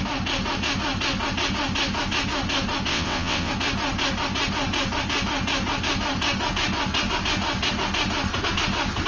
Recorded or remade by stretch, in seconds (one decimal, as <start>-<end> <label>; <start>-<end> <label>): 0.0-2.9 recorded; 2.9-3.5 remade; 3.5-9.1 recorded